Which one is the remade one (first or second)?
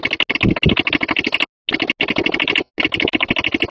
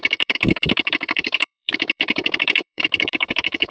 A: second